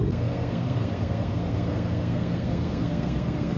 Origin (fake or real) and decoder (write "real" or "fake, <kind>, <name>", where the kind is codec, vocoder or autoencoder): fake, codec, SNAC